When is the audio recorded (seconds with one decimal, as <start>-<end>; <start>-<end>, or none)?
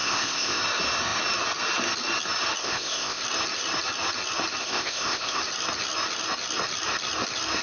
0.6-2.6; 3.2-4.6; 5.4-7.6